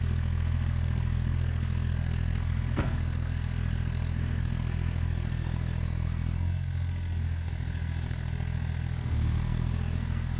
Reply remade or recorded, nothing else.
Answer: remade